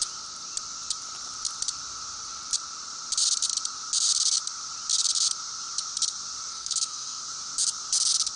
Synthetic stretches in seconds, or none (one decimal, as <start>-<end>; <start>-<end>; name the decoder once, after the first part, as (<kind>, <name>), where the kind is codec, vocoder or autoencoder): 6.5-7.2 (codec, SNAC)